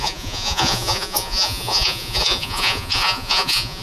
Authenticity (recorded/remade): remade